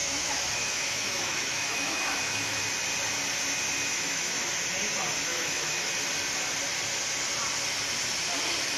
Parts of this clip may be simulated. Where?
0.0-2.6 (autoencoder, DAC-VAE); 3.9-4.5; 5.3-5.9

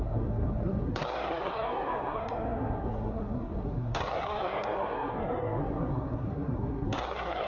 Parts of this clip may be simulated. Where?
0.0-7.5 (codec, SNAC)

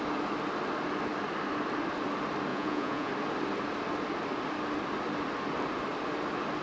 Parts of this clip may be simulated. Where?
2.5-3.1 (vocoder, Vocos)